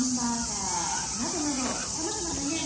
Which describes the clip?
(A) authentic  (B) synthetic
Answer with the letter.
A